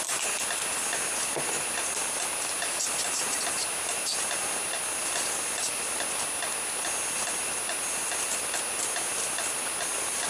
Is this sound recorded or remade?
recorded